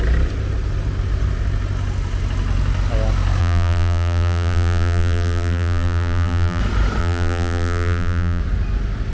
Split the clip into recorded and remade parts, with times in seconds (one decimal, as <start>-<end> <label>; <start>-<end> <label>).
0.0-3.4 recorded; 3.4-6.6 remade; 6.6-7.0 recorded; 7.0-8.4 remade; 8.4-9.1 recorded